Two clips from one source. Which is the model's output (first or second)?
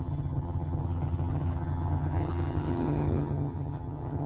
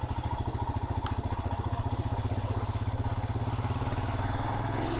first